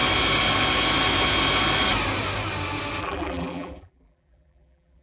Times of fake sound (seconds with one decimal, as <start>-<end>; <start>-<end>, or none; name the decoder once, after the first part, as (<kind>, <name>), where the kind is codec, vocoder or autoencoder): 3.0-5.0 (vocoder, BigVGAN v2)